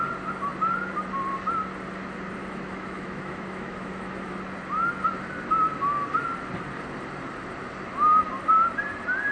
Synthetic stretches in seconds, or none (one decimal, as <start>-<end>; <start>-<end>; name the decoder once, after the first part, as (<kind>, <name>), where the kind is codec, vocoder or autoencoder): 2.4-4.3 (autoencoder, DAC-VAE)